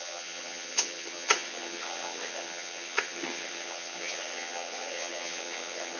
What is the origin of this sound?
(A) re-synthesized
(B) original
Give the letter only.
A